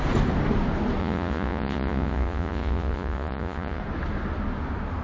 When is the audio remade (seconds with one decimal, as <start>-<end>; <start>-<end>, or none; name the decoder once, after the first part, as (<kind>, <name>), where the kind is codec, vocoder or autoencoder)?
1.0-3.8 (vocoder, Vocos)